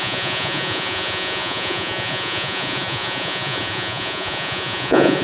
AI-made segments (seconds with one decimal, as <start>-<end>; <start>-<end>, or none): 0.0-5.2